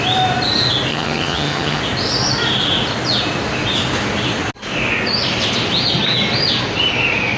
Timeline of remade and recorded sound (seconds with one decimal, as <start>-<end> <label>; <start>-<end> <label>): 0.0-0.9 recorded; 0.9-1.8 remade; 1.8-7.4 recorded